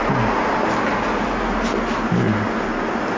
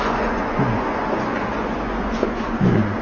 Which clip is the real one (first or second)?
first